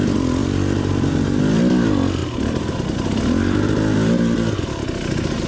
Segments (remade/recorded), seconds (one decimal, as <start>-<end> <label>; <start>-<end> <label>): 0.0-0.4 recorded; 0.4-1.4 remade; 1.4-5.5 recorded